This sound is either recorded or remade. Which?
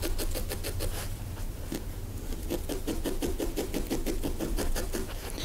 recorded